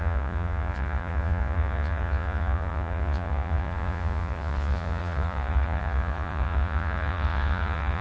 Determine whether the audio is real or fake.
fake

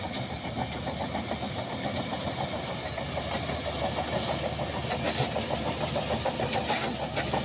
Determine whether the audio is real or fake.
real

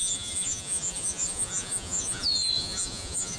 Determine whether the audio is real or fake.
fake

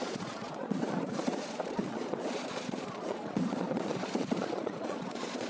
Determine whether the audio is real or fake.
fake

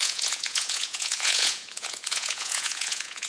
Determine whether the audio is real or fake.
fake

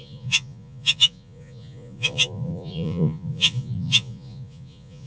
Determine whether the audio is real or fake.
fake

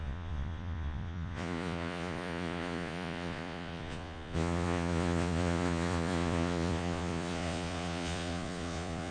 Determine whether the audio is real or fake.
fake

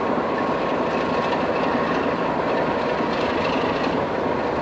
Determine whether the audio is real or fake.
real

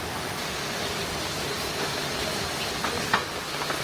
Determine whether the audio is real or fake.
real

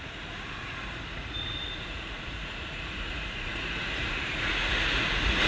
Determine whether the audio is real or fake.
fake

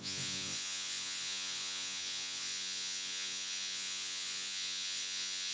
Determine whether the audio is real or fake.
fake